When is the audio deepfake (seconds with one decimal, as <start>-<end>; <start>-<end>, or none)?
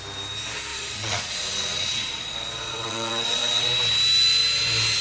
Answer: 0.7-3.7